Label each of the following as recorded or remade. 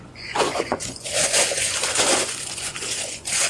remade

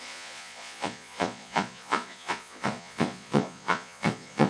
remade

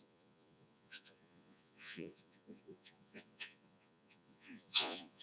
remade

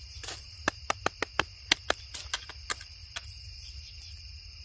recorded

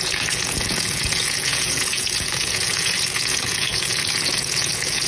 remade